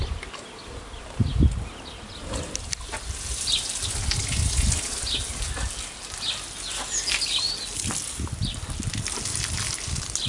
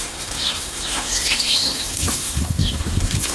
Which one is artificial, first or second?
second